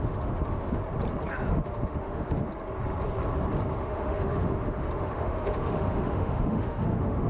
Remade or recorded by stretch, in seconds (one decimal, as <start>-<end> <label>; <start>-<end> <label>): 0.0-0.8 remade; 0.8-1.5 recorded; 1.5-2.5 remade; 2.5-3.8 recorded; 3.8-7.3 remade